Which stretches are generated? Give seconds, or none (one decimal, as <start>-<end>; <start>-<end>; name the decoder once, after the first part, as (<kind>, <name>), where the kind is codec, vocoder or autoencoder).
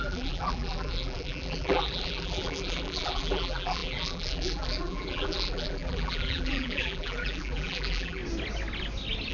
0.0-8.2 (vocoder, BigVGAN v2)